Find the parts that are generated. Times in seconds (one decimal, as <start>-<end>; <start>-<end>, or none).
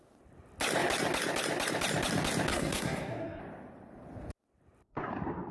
2.5-3.4